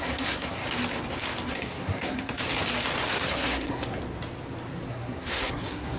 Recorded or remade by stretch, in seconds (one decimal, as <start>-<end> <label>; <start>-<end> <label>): 0.0-0.6 remade; 0.6-1.5 recorded; 1.5-2.4 remade; 2.4-3.1 recorded; 3.1-4.0 remade; 4.0-4.9 recorded; 4.9-6.0 remade